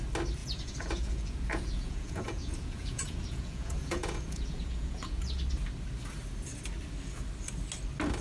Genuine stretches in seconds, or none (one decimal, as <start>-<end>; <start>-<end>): 0.0-0.4; 5.2-8.2